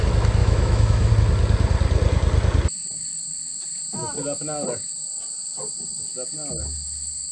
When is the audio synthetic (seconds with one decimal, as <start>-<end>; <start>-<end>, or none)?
0.4-1.1